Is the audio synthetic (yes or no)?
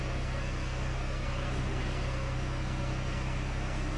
yes